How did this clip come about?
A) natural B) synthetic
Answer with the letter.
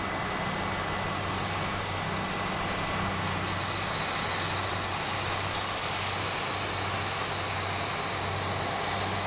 A